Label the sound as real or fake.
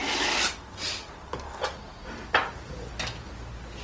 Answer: real